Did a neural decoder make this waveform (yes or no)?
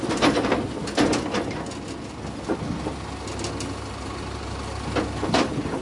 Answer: no